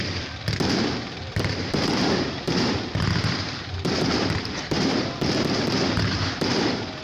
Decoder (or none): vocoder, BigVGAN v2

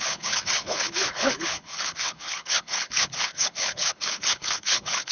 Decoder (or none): codec, HILCodec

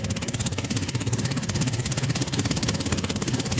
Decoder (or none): codec, SNAC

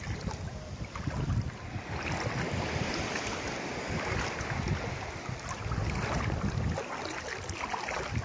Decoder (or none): none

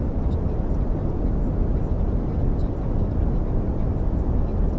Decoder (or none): none